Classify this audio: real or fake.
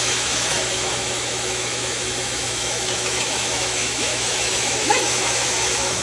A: fake